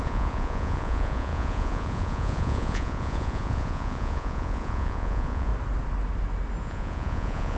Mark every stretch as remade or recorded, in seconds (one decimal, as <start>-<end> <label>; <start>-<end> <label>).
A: 0.0-5.5 remade; 5.5-6.6 recorded; 6.6-7.6 remade